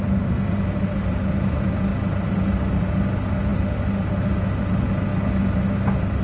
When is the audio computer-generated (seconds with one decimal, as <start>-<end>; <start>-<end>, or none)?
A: none